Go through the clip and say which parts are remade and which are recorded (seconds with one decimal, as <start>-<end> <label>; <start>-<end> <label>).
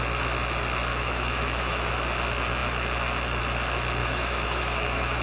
0.0-0.9 recorded; 0.9-1.9 remade; 1.9-4.0 recorded; 4.0-5.2 remade